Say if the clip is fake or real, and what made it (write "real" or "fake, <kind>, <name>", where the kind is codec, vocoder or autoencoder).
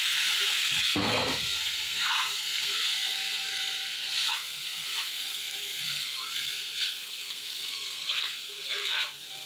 fake, codec, SNAC